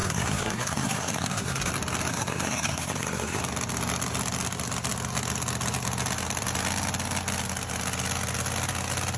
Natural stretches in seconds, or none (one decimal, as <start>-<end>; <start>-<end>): 1.7-2.1; 3.4-9.2